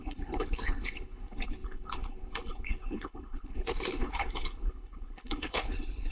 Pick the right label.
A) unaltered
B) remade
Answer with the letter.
B